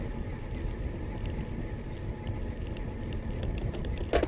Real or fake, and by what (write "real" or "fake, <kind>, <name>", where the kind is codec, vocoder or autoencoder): real